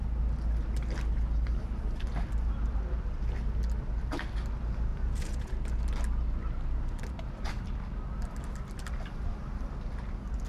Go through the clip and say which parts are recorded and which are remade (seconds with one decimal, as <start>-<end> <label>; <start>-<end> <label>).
0.0-4.9 recorded; 4.9-5.5 remade; 5.5-10.5 recorded